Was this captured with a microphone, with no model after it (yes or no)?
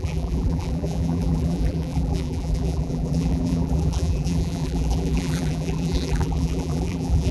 no